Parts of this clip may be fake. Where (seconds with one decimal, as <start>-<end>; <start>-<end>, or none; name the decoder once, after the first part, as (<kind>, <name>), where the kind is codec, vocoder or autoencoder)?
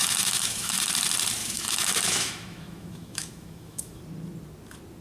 0.0-0.9 (autoencoder, DAC-VAE); 1.4-4.0